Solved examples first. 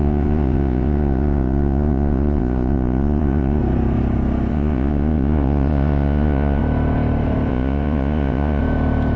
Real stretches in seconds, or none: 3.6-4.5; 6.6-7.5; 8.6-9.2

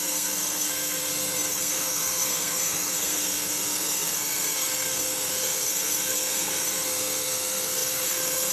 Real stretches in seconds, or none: none

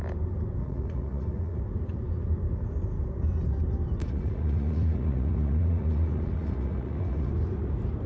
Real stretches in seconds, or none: 0.0-0.6; 1.6-4.0; 7.3-8.1